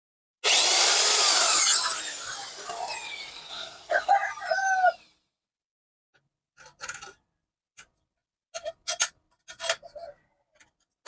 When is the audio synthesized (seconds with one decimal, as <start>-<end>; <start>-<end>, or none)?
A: 3.5-4.1